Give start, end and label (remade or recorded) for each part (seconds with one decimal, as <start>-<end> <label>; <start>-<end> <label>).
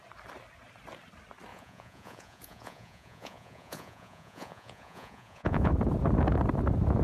0.0-1.5 recorded; 1.5-5.7 remade; 5.7-7.0 recorded